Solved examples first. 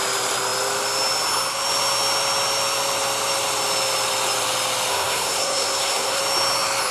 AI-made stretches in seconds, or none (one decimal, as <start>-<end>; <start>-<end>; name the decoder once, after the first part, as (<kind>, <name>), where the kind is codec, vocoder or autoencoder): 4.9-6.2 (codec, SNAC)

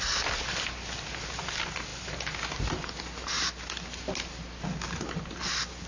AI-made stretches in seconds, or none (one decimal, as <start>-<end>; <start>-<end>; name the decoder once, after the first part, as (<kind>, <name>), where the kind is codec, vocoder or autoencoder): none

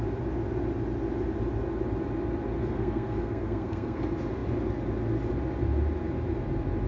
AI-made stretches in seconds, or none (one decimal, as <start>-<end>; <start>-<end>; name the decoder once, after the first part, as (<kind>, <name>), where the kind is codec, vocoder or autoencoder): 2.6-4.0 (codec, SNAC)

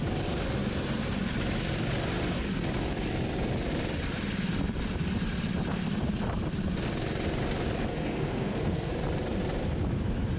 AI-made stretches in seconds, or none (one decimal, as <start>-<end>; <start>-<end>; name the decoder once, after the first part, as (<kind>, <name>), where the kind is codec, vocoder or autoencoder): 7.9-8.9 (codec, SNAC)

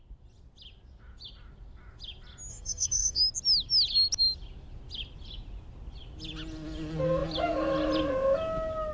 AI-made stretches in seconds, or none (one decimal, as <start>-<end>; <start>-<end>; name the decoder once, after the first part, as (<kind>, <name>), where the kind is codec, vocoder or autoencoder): 2.5-3.2 (codec, SNAC)

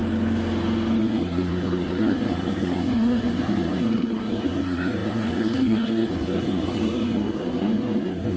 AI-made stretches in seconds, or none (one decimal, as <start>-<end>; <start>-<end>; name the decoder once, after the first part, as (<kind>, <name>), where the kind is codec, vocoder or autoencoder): 1.0-8.4 (codec, SNAC)